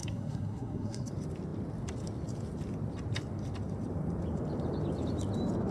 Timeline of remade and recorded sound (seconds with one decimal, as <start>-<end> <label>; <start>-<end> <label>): 0.0-1.1 remade; 1.1-5.7 recorded